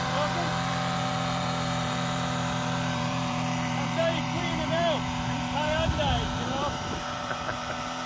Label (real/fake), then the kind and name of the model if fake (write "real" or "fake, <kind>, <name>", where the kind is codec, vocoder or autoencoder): fake, vocoder, BigVGAN v2